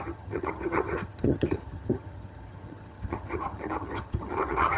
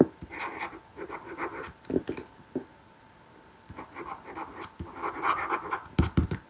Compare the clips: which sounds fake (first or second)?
first